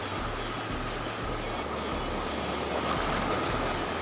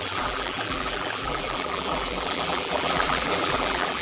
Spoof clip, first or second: second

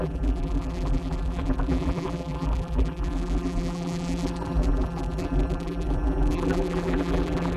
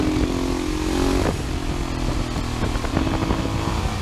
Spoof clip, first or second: first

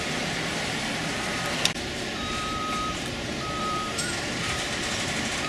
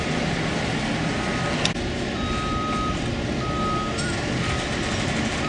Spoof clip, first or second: first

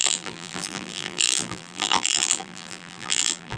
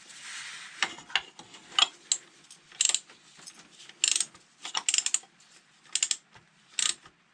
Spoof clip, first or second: first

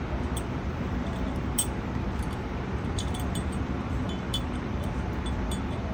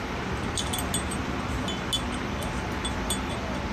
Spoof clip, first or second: first